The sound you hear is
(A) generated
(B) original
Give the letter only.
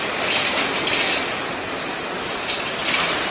B